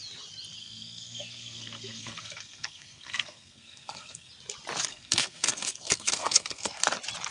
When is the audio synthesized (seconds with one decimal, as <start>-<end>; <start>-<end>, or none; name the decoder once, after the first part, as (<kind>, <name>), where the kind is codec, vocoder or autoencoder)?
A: 0.6-4.3 (codec, SNAC); 4.9-6.8